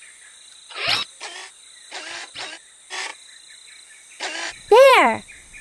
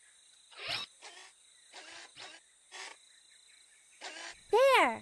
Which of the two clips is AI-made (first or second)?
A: first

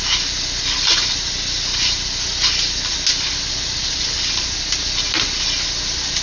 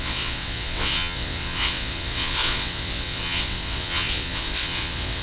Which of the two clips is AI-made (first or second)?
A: second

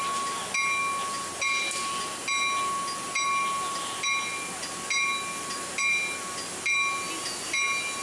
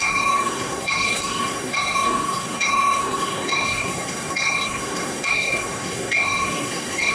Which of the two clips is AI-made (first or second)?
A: second